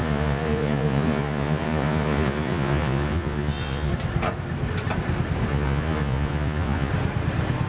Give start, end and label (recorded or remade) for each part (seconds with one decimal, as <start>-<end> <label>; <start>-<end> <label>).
0.0-3.9 remade; 3.9-5.5 recorded; 5.5-6.9 remade; 6.9-7.7 recorded